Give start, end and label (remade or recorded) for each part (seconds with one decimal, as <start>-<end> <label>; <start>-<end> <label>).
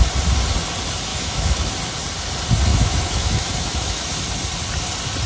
0.0-1.1 recorded; 1.1-1.7 remade; 1.7-2.7 recorded; 2.7-4.1 remade; 4.1-5.3 recorded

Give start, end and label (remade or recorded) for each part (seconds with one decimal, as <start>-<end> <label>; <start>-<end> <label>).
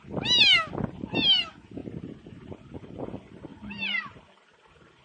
0.0-3.5 recorded; 3.5-4.2 remade; 4.2-5.0 recorded